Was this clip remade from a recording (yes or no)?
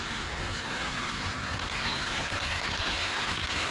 yes